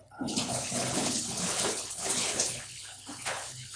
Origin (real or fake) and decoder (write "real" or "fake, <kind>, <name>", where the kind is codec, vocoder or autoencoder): fake, codec, HILCodec